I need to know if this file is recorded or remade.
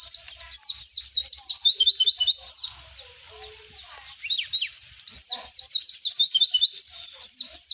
recorded